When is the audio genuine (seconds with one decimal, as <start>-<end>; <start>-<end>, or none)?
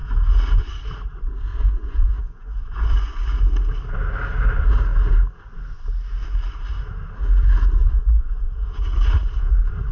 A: 0.0-1.5; 3.2-7.8; 8.5-9.9